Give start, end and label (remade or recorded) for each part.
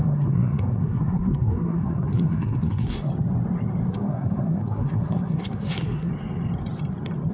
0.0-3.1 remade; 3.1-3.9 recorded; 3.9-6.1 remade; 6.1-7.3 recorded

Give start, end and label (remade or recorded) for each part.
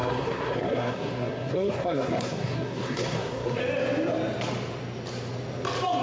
0.0-3.6 remade; 3.6-6.0 recorded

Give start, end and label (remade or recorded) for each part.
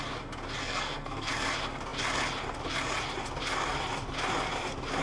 0.0-0.6 recorded; 0.6-1.3 remade; 1.3-5.0 recorded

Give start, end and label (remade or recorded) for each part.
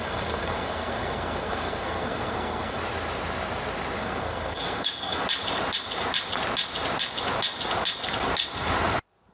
0.0-2.8 remade; 2.8-4.0 recorded; 4.0-5.2 remade; 5.2-9.3 recorded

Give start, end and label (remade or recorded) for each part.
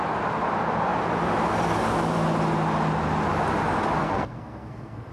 0.0-4.0 recorded; 4.0-5.1 remade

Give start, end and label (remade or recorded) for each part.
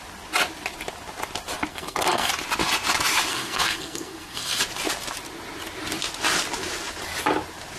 0.0-1.7 recorded; 1.7-2.3 remade; 2.3-3.3 recorded; 3.3-4.6 remade; 4.6-7.8 recorded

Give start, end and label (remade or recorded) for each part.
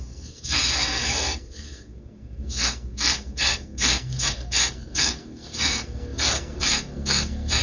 0.0-7.6 remade